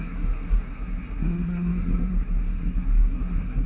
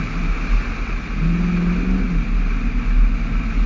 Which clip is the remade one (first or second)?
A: first